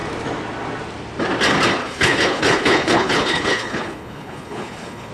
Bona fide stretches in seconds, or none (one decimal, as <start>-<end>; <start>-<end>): 0.0-1.8